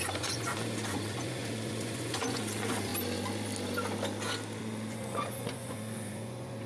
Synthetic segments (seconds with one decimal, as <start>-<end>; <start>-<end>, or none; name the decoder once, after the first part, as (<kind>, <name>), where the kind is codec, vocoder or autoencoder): 0.0-2.9 (vocoder, Vocos); 4.6-6.7